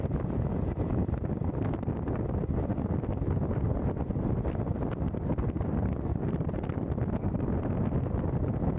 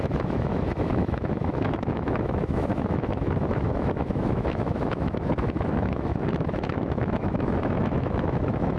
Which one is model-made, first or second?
second